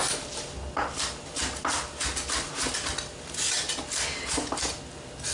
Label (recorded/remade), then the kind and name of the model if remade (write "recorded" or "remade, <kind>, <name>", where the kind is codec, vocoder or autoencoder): recorded